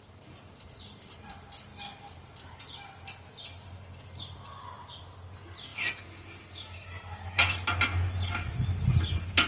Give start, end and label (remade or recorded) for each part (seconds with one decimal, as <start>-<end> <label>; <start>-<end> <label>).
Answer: 0.0-9.5 recorded